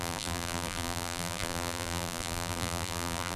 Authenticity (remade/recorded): remade